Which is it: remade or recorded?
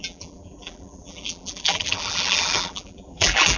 remade